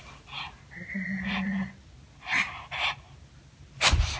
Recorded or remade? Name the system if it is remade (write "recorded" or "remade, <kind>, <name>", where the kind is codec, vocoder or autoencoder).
recorded